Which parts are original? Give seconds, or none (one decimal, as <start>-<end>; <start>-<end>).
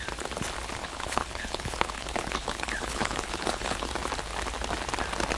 0.0-0.8; 3.9-5.4